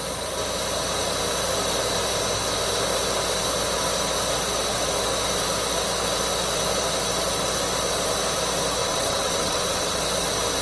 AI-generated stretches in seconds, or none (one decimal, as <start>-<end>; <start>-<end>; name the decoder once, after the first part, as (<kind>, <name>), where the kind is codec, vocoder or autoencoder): 8.8-10.0 (vocoder, WaveNeXt)